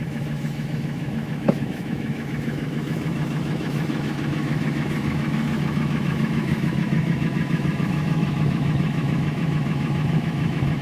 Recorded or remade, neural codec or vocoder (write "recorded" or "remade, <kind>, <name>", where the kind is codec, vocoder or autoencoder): remade, autoencoder, DAC-VAE